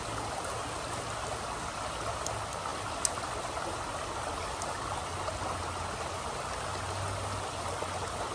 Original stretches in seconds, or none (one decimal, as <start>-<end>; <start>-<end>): 0.0-8.3